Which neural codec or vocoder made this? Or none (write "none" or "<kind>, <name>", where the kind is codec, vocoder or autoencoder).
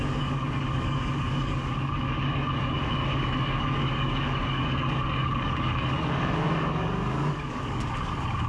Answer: codec, DAC